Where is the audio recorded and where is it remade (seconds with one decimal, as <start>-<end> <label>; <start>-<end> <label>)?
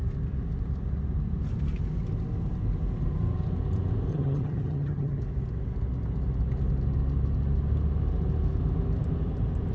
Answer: 0.0-4.1 recorded; 4.1-5.2 remade; 5.2-9.7 recorded